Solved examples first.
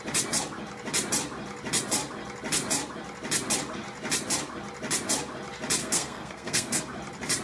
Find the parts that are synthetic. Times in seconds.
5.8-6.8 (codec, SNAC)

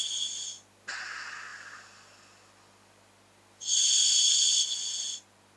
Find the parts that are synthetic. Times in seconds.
none

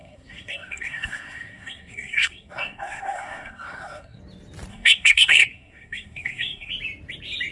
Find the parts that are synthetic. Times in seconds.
0.0-4.2 (codec, SNAC); 4.7-6.7